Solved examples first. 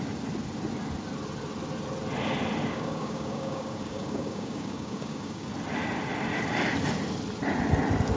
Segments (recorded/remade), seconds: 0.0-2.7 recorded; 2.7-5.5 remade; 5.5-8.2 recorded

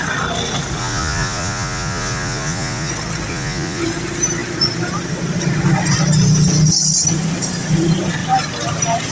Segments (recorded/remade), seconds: 0.0-0.8 recorded; 0.8-2.9 remade; 2.9-3.3 recorded; 3.3-3.8 remade; 3.8-9.1 recorded

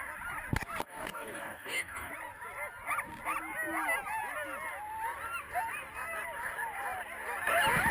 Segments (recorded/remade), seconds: 0.0-0.8 recorded; 0.8-2.1 remade; 2.1-7.9 recorded

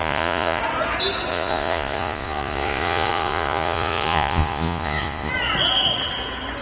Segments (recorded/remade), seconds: 0.0-0.6 remade; 0.6-1.3 recorded; 1.3-5.3 remade; 5.3-6.6 recorded

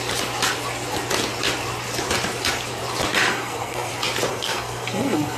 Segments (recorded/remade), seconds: 0.0-3.3 recorded; 3.3-3.9 remade; 3.9-4.3 recorded; 4.3-5.4 remade

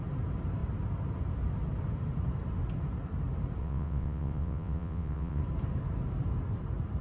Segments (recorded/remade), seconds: 0.0-3.6 recorded; 3.6-5.4 remade; 5.4-7.0 recorded

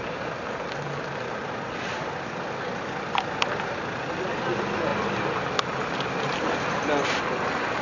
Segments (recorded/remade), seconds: 0.0-7.8 recorded

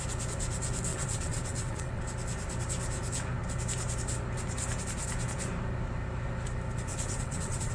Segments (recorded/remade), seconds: 0.0-0.9 recorded; 0.9-2.0 remade; 2.0-6.9 recorded; 6.9-7.7 remade